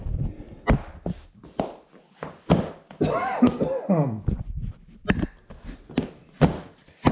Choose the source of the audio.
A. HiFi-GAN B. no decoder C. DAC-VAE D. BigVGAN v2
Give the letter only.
B